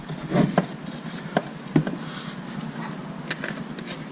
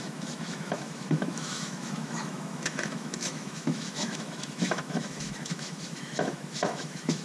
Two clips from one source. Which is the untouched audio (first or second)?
first